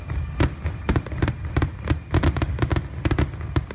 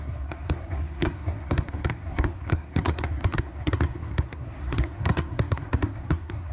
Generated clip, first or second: second